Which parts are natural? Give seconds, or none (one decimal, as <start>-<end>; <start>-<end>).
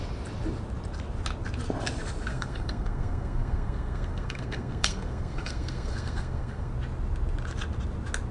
0.0-2.3; 6.7-8.3